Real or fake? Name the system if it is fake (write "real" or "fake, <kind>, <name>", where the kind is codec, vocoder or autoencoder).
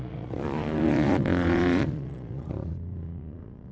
fake, vocoder, Vocos